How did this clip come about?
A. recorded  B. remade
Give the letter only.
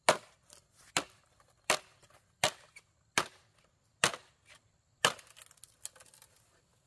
A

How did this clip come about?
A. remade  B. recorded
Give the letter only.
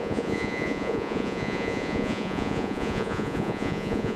A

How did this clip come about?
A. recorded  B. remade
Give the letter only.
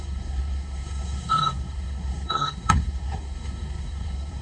B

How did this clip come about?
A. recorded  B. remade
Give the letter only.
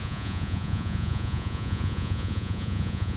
B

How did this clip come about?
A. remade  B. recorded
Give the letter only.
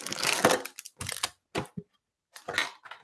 B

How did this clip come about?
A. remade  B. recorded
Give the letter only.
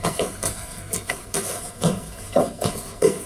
A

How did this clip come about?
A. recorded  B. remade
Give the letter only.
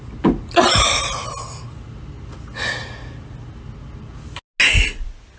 A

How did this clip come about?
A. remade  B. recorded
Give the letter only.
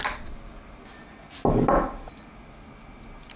B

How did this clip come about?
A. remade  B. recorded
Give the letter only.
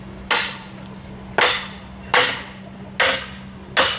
B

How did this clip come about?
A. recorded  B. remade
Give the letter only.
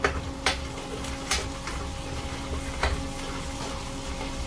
A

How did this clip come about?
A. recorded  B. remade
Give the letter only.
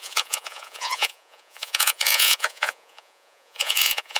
B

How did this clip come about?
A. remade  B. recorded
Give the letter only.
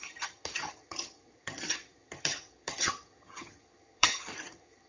A